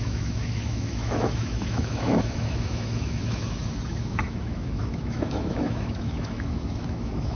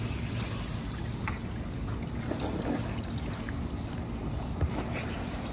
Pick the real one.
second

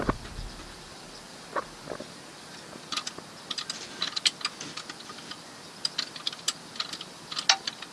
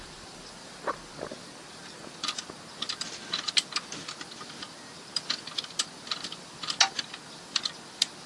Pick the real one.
first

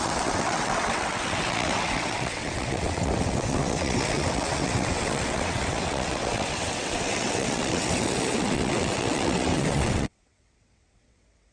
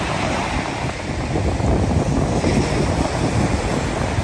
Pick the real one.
second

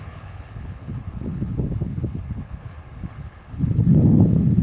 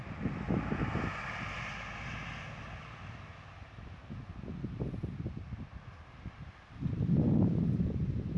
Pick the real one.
second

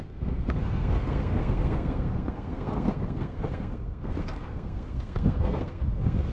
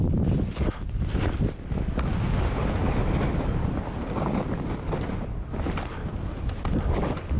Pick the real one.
second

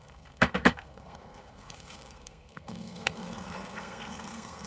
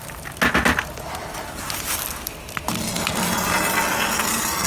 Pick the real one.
second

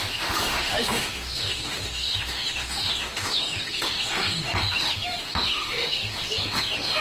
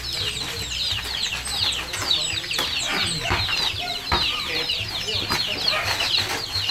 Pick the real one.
second